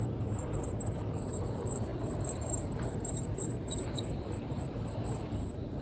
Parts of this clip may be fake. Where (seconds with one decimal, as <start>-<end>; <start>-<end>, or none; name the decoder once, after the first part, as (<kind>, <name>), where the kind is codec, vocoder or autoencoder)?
0.0-5.8 (vocoder, BigVGAN v2)